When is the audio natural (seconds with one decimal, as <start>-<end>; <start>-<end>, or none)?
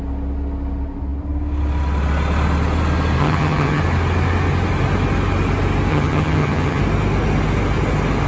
0.0-3.2; 3.8-5.9; 6.8-8.3